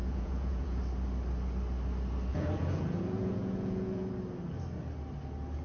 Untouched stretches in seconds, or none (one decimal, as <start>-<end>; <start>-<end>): 0.8-2.3; 4.1-5.6